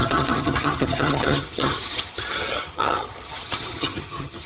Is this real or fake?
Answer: fake